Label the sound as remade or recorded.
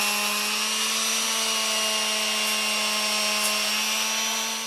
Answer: recorded